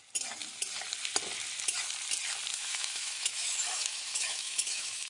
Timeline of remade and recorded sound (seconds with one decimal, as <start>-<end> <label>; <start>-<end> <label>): 0.0-2.5 recorded; 2.5-5.1 remade